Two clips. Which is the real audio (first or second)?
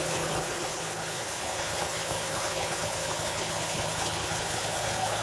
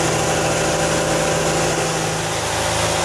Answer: second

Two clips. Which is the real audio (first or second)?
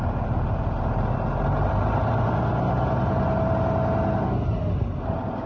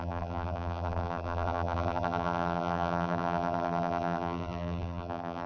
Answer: first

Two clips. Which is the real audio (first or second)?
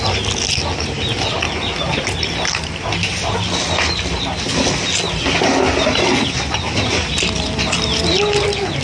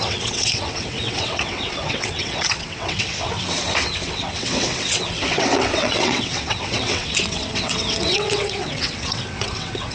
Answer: first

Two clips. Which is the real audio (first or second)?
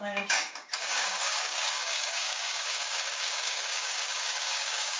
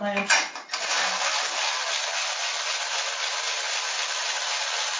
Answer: second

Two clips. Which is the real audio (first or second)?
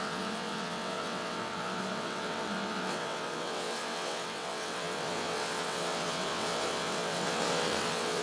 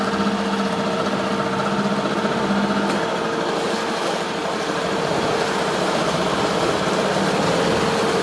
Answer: second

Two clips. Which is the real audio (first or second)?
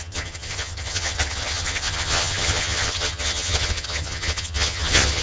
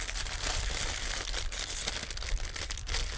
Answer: second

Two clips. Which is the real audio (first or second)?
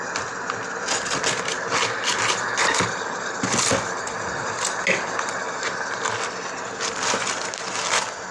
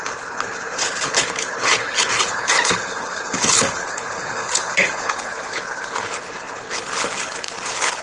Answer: first